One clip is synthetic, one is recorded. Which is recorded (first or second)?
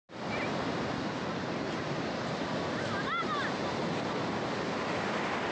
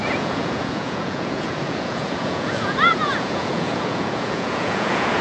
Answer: first